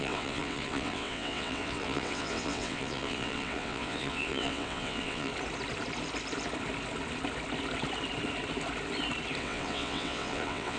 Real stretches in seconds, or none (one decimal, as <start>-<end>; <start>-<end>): 5.3-9.4